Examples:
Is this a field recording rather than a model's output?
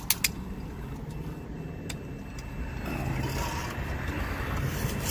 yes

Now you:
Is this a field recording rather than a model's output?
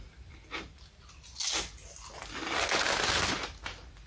yes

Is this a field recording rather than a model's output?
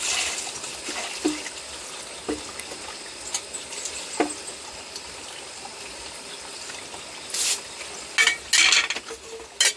yes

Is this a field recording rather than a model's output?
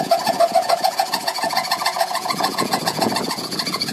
no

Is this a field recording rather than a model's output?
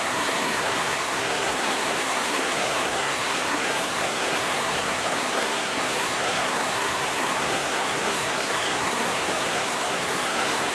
no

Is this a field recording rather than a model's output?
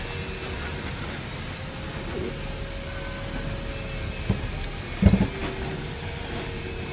yes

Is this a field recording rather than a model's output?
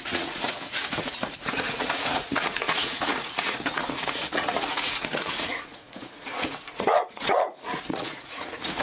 no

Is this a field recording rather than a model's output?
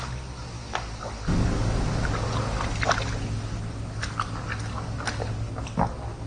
yes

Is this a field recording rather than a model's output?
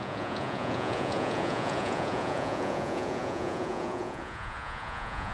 no